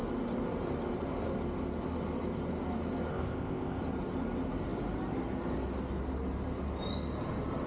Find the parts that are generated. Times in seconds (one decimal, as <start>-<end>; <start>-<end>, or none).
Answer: 3.1-3.8